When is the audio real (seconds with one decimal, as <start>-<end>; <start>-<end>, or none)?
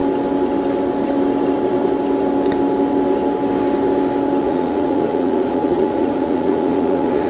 0.0-4.4